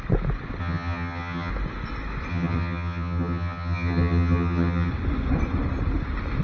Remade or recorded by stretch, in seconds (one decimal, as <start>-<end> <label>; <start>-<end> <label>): 0.0-0.6 recorded; 0.6-1.5 remade; 1.5-2.3 recorded; 2.3-4.9 remade; 4.9-6.4 recorded